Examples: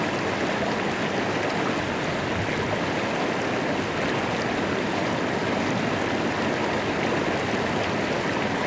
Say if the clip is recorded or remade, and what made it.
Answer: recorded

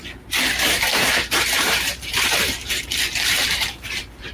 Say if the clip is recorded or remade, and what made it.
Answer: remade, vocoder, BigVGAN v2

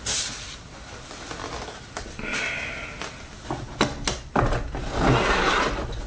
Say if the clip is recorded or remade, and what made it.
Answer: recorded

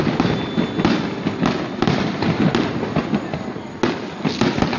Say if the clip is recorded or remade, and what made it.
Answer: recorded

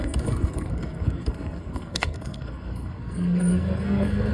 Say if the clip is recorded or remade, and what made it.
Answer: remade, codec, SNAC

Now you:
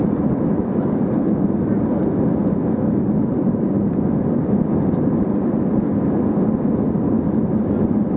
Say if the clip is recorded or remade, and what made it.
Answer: recorded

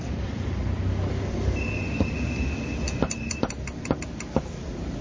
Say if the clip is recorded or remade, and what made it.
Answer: recorded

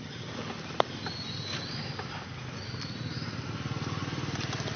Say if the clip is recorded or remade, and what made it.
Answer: recorded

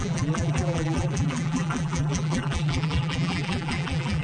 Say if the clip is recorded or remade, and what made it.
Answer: remade, vocoder, BigVGAN v2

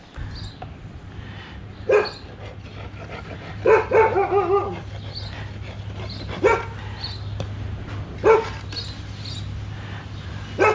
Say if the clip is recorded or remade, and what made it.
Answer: recorded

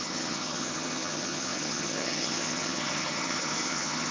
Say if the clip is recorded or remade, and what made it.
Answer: remade, vocoder, HiFi-GAN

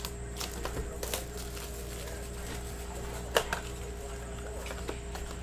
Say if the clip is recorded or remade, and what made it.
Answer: recorded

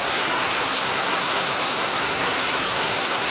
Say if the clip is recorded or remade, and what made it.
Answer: remade, codec, SNAC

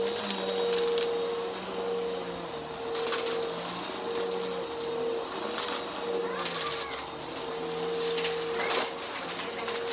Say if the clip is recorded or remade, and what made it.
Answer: recorded